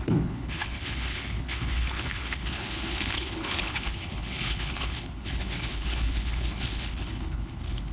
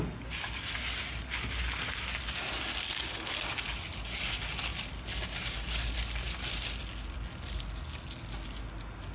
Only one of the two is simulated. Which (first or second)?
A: first